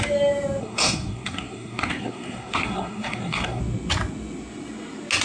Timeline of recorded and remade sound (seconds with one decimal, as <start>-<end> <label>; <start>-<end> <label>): 0.0-0.6 recorded; 0.6-3.6 remade; 3.6-5.2 recorded